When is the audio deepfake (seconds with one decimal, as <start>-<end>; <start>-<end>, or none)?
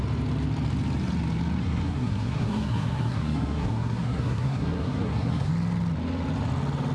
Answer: 1.6-5.5